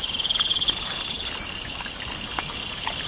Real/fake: fake